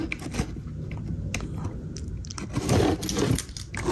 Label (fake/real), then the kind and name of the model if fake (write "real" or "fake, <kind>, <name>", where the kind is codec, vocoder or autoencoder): real